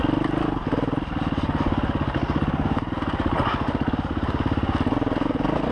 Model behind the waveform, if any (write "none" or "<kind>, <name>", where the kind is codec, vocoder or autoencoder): none